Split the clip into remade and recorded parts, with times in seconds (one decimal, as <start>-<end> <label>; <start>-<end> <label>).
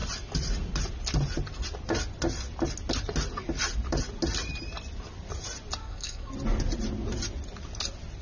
0.0-5.8 recorded; 5.8-6.3 remade; 6.3-8.2 recorded